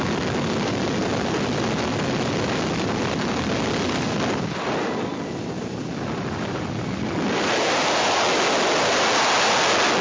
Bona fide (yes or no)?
yes